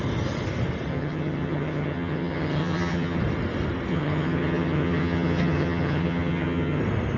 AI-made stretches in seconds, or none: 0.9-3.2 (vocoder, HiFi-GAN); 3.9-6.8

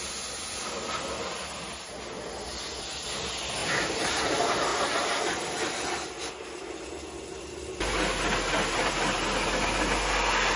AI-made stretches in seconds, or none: 3.6-4.3 (vocoder, BigVGAN v2)

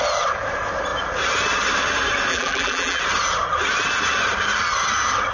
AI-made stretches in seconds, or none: 2.3-3.0 (vocoder, BigVGAN v2)

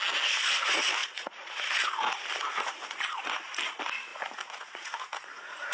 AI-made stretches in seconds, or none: 1.0-1.5 (vocoder, Vocos); 2.4-3.5; 4.1-5.7

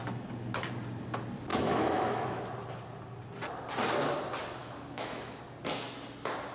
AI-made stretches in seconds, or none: 1.5-2.4 (autoencoder, DAC-VAE); 4.6-5.4

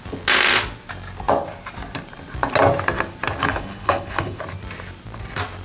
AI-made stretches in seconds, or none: 3.4-4.4 (codec, HILCodec)

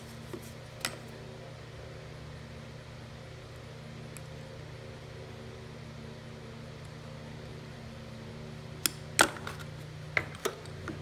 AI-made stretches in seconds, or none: 7.5-8.3 (vocoder, BigVGAN v2)

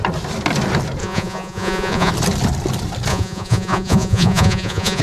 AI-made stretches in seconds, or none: 1.0-2.1 (vocoder, Vocos); 3.1-5.0